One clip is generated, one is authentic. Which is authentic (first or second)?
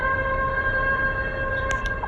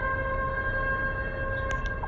second